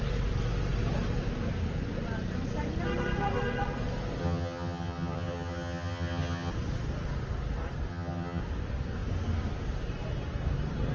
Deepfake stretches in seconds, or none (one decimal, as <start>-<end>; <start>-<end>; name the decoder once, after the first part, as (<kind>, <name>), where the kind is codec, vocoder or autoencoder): 4.2-6.5 (vocoder, HiFi-GAN); 7.9-8.4